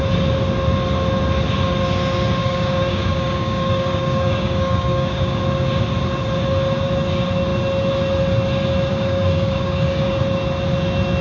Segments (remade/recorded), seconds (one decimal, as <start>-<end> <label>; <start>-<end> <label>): 0.0-2.4 recorded; 2.4-5.4 remade; 5.4-8.9 recorded; 8.9-10.2 remade; 10.2-11.2 recorded